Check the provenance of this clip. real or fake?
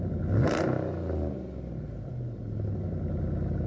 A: real